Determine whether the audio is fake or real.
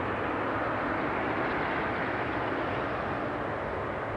real